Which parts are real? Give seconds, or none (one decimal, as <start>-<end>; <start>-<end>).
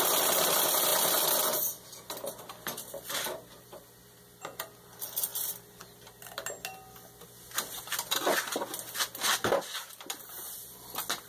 0.0-11.3